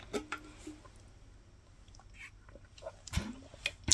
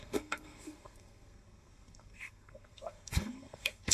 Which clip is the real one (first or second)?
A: first